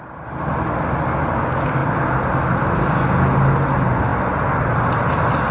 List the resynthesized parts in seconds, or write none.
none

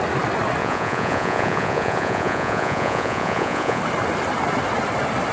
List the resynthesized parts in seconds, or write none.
0.6-3.8 (vocoder, Vocos)

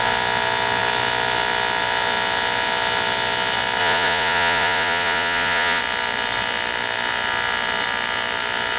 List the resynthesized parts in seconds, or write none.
3.8-5.8 (vocoder, Vocos)

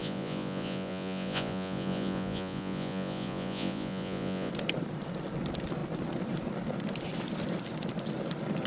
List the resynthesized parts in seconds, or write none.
0.0-4.5 (vocoder, Vocos)

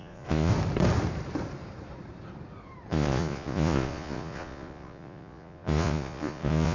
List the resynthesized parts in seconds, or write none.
0.0-0.5 (vocoder, Vocos); 2.9-6.7

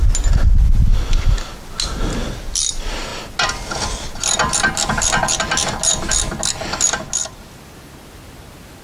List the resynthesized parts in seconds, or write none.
none

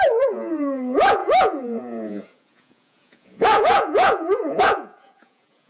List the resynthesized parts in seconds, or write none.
0.0-5.7 (vocoder, Vocos)

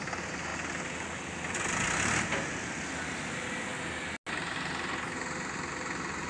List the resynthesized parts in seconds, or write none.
none